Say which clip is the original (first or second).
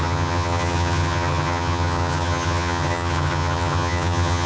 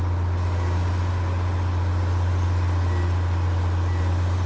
second